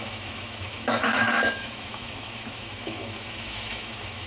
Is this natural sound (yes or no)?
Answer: no